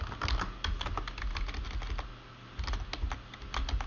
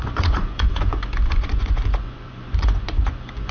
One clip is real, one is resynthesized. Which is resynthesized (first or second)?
second